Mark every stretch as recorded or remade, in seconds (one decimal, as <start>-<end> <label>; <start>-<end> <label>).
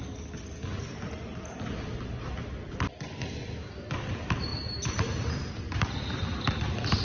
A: 0.0-4.5 recorded; 4.5-5.5 remade; 5.5-7.0 recorded